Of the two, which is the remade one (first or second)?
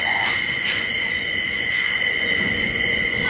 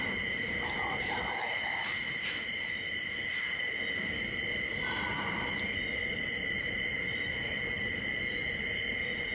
first